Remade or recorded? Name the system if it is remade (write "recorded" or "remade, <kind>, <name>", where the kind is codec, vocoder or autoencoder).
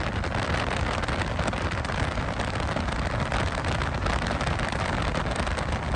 recorded